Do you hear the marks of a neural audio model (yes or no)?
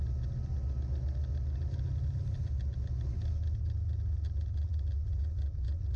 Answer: no